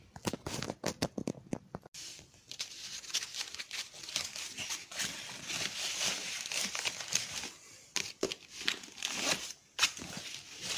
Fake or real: real